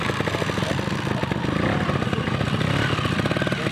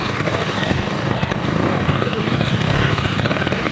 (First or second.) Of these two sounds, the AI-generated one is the second